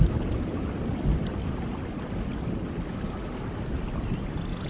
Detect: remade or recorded recorded